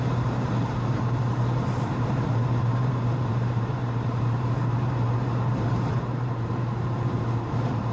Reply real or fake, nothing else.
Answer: fake